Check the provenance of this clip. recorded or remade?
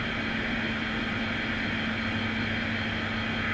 recorded